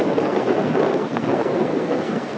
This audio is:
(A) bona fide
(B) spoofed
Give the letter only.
B